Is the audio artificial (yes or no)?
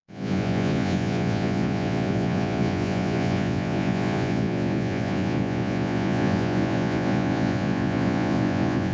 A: yes